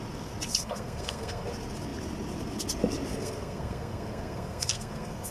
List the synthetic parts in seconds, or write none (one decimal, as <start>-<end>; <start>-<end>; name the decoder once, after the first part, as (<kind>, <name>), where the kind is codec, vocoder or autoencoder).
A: 0.5-1.5 (codec, SNAC); 3.1-5.3